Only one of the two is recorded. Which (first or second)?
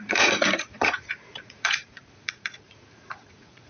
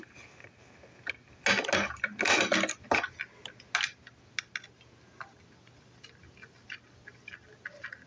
second